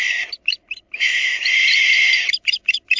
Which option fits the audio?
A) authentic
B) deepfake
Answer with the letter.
B